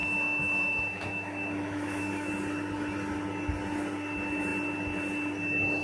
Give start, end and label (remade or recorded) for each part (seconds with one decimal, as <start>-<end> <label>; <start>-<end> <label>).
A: 0.0-2.3 remade; 2.3-5.8 recorded